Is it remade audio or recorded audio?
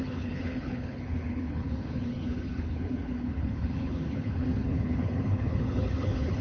remade